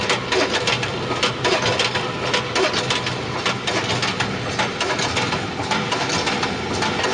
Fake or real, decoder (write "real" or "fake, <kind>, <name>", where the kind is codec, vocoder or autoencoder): real